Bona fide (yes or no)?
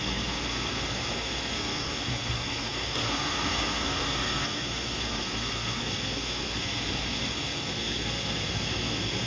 no